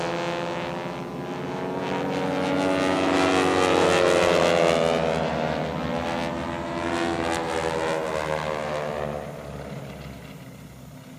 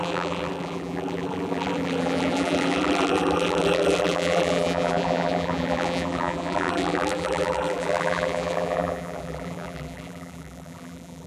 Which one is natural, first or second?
first